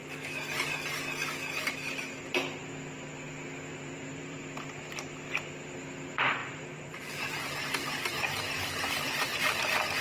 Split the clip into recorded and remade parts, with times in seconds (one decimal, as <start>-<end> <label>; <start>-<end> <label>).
0.0-3.7 recorded; 3.7-4.4 remade; 4.4-6.4 recorded; 6.4-9.4 remade; 9.4-10.0 recorded